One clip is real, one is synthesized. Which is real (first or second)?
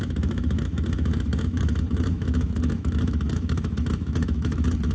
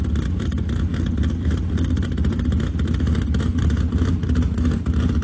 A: second